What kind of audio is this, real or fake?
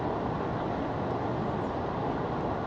real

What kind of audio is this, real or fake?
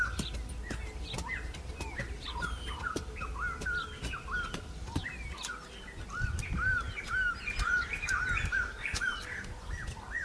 real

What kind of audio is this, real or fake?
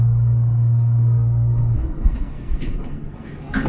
fake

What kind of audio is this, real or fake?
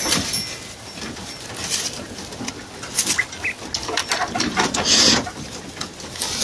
real